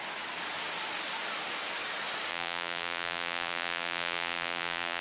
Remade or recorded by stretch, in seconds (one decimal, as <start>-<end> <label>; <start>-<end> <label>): 0.0-2.3 recorded; 2.3-5.0 remade